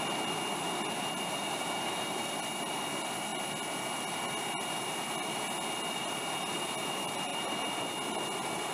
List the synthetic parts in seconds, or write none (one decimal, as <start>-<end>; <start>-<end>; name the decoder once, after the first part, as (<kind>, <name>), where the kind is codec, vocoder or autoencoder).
none